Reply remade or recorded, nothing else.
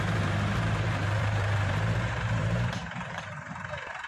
remade